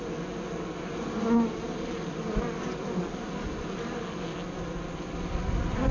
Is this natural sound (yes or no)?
yes